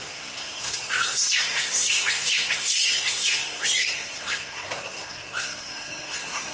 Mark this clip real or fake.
fake